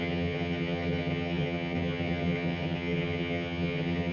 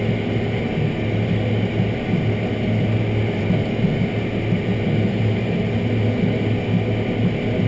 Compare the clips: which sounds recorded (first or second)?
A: second